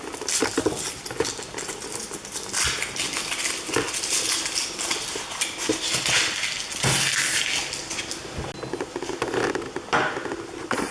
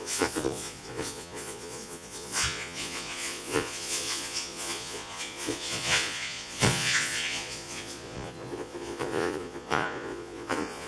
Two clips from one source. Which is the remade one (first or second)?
second